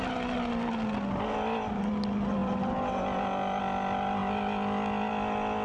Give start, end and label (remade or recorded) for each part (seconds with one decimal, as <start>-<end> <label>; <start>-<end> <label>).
0.0-5.6 recorded